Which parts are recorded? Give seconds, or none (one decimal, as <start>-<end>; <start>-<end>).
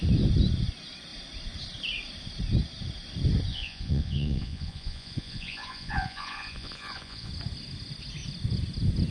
0.0-3.5; 7.3-9.1